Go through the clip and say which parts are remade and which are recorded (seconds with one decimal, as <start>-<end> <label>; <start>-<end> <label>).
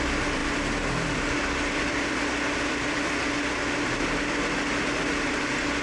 0.0-5.8 recorded